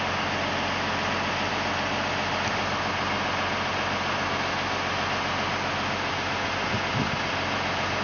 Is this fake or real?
real